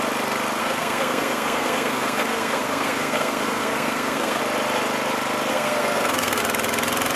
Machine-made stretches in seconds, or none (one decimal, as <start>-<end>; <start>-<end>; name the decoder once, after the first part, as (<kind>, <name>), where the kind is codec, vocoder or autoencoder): 0.6-4.4 (codec, SNAC); 5.5-6.4